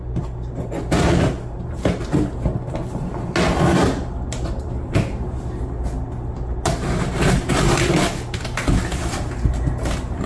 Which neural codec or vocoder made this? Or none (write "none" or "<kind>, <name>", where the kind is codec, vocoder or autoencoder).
none